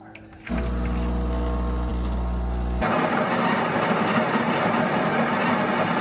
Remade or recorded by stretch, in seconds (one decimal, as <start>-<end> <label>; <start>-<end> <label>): 0.0-6.0 recorded